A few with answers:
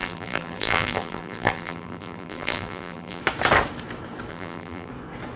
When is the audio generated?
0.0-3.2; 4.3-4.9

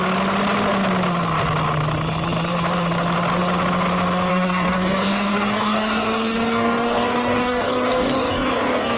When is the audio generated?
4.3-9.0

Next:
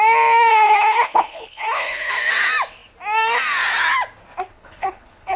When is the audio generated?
0.5-2.1; 4.5-5.4

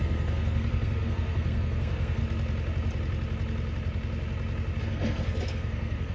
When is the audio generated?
0.0-2.2; 4.8-6.1

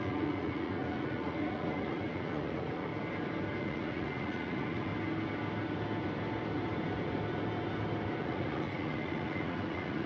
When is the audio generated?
0.0-2.9; 3.6-4.9; 8.2-10.1

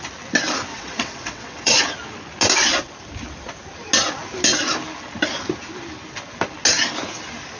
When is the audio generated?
0.7-1.8

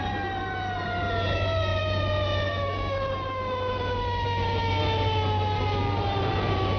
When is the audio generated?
none

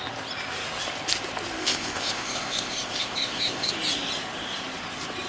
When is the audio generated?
1.6-3.7